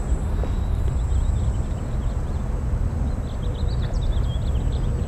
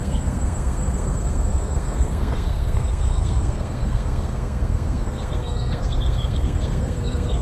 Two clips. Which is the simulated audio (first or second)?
second